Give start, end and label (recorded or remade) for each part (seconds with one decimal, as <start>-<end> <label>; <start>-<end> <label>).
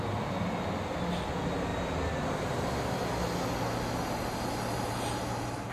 0.0-5.7 recorded